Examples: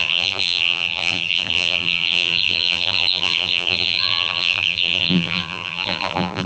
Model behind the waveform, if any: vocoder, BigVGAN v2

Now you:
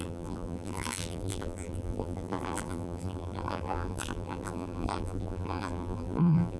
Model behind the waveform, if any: vocoder, BigVGAN v2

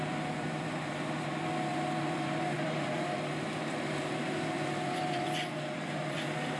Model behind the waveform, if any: vocoder, BigVGAN v2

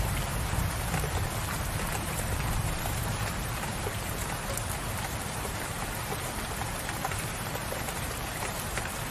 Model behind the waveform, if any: vocoder, BigVGAN v2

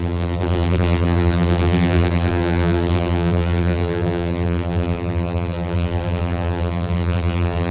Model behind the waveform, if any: vocoder, BigVGAN v2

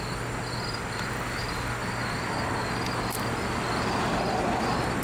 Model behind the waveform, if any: none